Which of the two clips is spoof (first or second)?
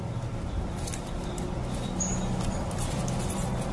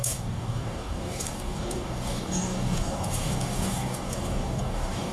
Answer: second